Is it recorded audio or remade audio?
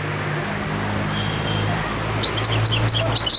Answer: recorded